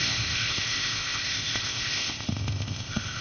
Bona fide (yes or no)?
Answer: no